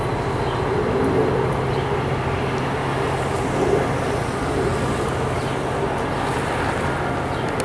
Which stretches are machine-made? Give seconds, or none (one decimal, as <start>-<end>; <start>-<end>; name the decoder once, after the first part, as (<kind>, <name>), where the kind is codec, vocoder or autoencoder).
none